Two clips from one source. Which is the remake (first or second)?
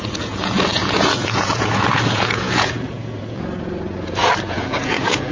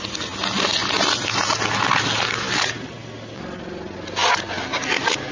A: first